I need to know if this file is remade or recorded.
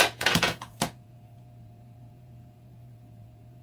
remade